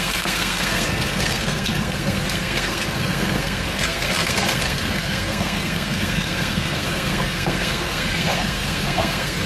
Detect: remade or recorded remade